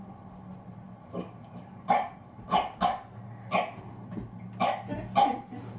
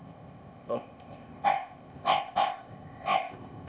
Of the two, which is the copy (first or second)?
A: second